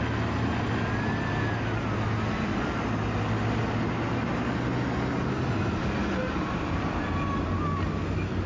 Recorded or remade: recorded